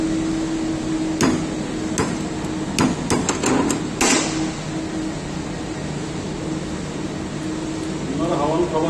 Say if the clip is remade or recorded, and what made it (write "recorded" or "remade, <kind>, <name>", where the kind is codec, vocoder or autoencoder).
recorded